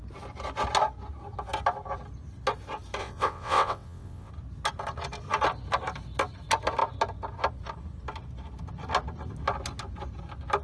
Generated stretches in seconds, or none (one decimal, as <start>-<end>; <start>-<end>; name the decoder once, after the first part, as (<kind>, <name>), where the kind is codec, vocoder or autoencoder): 3.0-4.3 (vocoder, WaveNeXt)